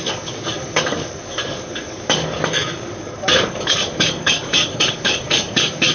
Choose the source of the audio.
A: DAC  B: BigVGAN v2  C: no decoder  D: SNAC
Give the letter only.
A